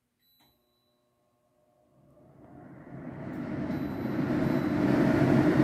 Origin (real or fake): real